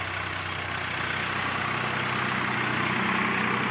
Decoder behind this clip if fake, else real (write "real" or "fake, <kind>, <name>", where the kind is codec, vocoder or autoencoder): real